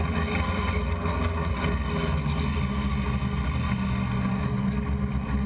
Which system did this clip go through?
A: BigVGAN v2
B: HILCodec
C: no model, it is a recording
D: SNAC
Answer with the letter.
C